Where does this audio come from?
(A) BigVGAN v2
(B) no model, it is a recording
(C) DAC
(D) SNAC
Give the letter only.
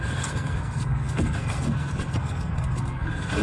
D